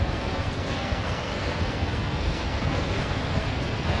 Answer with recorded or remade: remade